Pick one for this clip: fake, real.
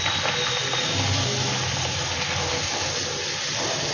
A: real